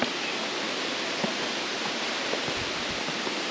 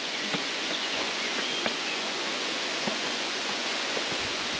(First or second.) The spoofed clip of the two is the second